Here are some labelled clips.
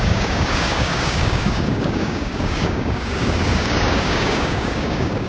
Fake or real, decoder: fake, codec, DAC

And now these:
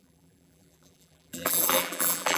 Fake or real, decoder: fake, vocoder, BigVGAN v2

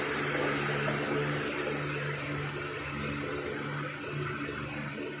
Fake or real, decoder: real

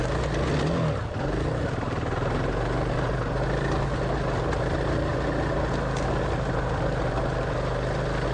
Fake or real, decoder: real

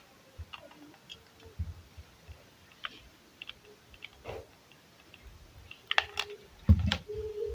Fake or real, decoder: real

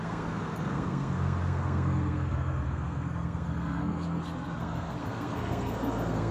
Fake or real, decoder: fake, codec, SNAC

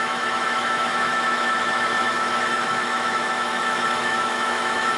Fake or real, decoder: fake, autoencoder, DAC-VAE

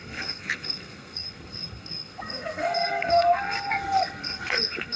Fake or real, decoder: fake, codec, SNAC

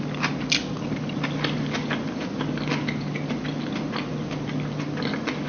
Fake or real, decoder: real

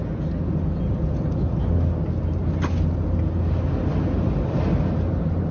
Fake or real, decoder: real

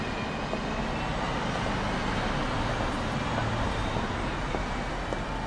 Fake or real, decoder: real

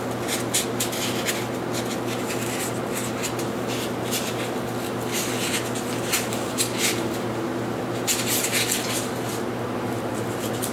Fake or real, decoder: real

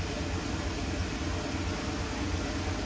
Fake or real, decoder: real